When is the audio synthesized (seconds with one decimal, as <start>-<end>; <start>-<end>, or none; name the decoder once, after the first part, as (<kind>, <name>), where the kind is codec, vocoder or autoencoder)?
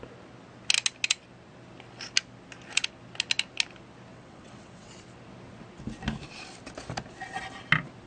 4.1-4.9 (vocoder, WaveNeXt)